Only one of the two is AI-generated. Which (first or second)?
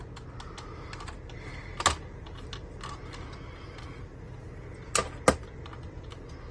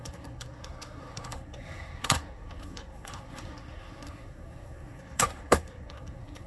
second